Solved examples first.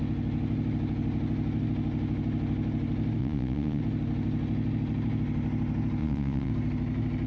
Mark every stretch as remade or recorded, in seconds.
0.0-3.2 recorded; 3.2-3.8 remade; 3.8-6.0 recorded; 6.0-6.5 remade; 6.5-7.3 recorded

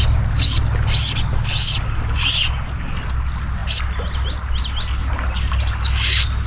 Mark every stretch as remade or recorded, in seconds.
0.0-6.5 recorded

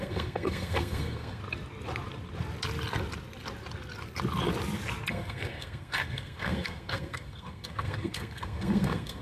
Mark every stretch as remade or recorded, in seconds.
0.0-1.4 remade; 1.4-5.1 recorded; 5.1-9.2 remade

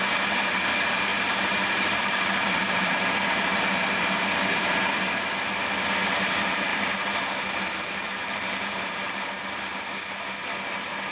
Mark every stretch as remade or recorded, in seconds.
0.0-1.1 recorded; 1.1-3.1 remade; 3.1-6.7 recorded; 6.7-9.4 remade; 9.4-11.1 recorded